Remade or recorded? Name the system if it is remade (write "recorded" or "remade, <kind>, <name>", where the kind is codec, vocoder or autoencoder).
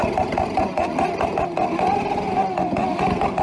recorded